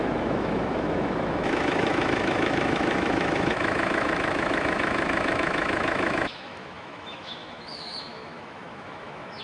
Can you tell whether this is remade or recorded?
remade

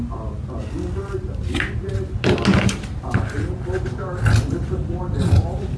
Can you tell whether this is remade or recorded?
recorded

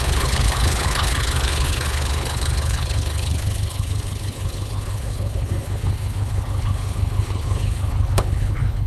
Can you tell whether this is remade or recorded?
remade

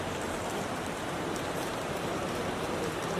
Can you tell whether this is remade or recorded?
remade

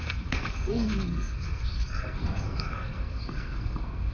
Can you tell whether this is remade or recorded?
remade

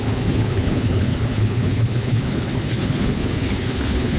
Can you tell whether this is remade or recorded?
remade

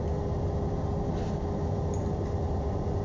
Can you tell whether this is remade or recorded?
recorded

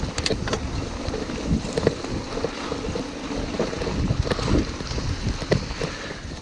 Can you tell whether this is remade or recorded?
recorded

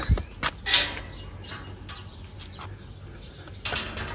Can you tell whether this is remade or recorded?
recorded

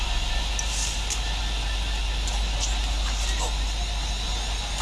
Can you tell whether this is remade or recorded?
recorded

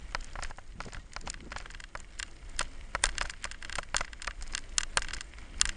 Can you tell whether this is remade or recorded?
recorded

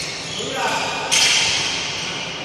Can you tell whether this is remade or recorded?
recorded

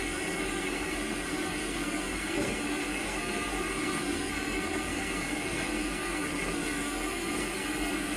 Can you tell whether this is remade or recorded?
remade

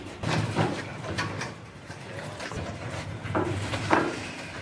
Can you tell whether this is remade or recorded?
remade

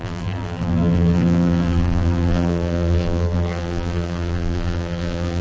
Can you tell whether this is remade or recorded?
remade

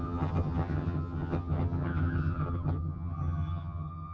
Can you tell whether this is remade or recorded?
remade